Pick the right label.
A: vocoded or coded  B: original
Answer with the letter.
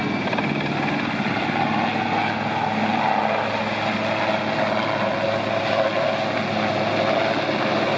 B